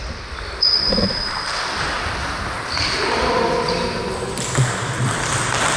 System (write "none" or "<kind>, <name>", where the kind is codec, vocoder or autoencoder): none